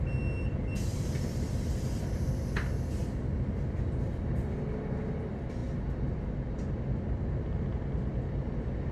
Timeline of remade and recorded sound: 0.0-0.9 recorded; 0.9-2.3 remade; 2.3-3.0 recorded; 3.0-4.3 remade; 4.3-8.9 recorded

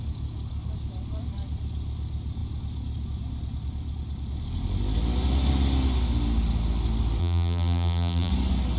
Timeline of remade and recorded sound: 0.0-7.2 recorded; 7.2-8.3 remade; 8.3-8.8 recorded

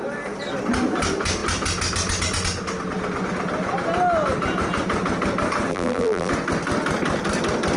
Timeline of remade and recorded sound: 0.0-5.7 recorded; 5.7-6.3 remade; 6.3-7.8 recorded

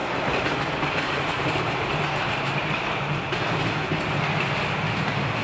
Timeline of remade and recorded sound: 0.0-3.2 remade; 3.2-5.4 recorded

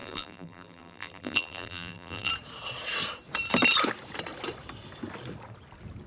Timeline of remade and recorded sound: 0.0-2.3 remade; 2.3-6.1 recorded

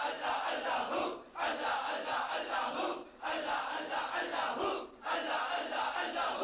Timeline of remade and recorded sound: 0.0-1.8 recorded; 1.8-4.0 remade; 4.0-6.4 recorded